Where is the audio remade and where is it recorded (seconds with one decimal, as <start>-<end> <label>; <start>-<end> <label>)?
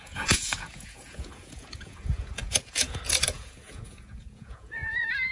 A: 0.0-5.3 remade